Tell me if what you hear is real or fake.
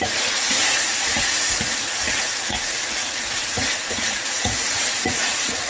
fake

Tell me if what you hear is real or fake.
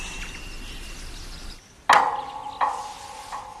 real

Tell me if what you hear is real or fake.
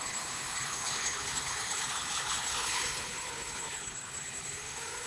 fake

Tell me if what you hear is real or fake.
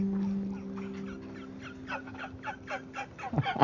real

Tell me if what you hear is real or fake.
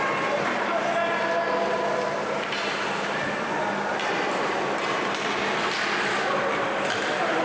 real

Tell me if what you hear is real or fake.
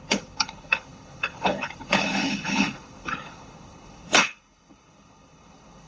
fake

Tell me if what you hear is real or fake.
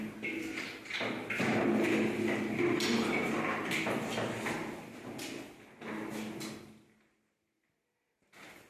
real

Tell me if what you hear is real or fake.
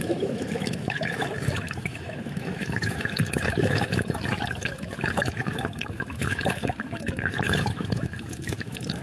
fake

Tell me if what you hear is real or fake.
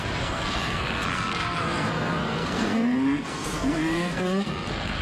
fake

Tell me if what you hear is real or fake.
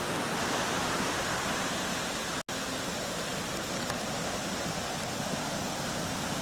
real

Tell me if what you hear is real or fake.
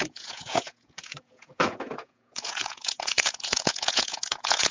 fake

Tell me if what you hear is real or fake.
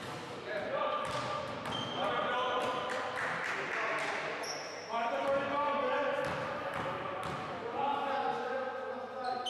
real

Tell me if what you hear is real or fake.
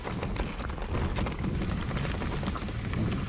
real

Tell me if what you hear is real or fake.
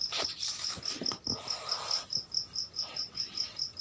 real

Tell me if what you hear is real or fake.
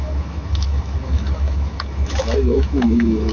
fake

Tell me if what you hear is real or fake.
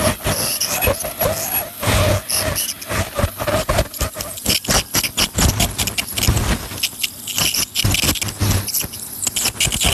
real